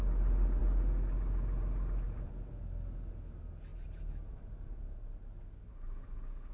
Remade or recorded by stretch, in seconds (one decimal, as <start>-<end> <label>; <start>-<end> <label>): 0.0-3.7 recorded; 3.7-5.3 remade; 5.3-6.5 recorded